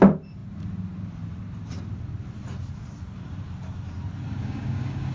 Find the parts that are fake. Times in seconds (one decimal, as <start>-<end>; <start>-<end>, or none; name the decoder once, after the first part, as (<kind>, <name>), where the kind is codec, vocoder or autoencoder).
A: 4.4-5.1 (codec, DAC)